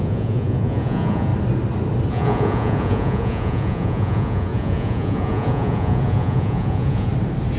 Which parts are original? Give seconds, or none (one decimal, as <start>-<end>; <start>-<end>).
1.3-2.1; 7.1-7.6